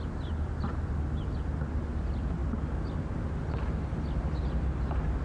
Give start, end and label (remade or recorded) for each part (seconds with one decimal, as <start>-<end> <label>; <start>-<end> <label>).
0.0-5.2 recorded